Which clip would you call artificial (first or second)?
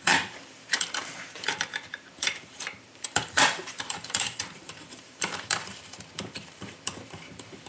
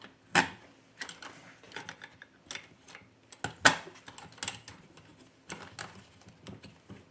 first